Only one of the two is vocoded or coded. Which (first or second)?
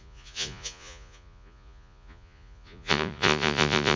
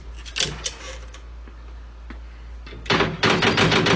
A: first